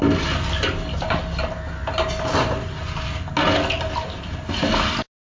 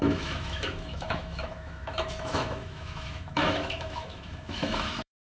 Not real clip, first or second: second